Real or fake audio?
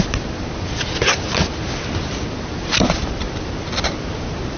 real